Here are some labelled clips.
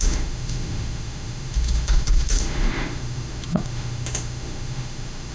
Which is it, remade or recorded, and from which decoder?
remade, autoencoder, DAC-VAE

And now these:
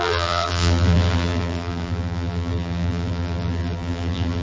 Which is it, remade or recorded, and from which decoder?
remade, vocoder, BigVGAN v2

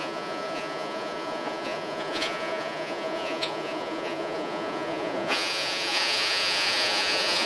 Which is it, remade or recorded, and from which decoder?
remade, vocoder, Vocos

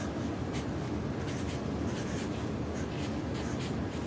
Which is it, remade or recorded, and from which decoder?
recorded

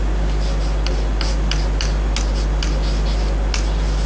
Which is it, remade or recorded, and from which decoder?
recorded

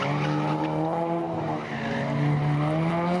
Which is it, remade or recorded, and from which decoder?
recorded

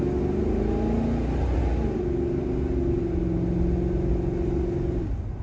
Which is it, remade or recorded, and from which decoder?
recorded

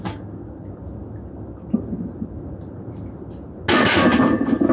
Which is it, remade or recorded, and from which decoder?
recorded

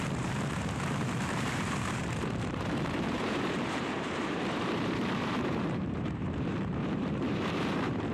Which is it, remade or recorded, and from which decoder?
remade, vocoder, BigVGAN v2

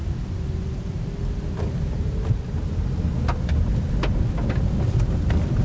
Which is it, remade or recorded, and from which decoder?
recorded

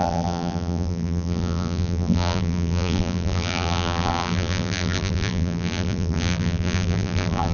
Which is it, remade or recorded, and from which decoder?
remade, vocoder, BigVGAN v2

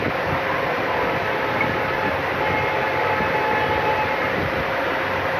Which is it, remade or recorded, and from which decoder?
recorded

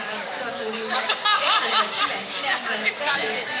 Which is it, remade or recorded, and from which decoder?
remade, codec, DAC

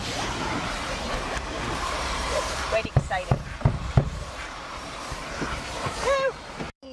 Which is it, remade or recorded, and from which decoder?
remade, vocoder, BigVGAN v2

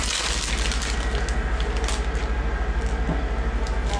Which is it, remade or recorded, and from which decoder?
recorded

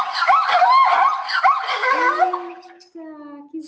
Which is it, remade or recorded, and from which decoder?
recorded